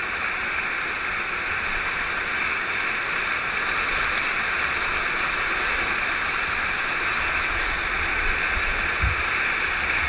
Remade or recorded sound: recorded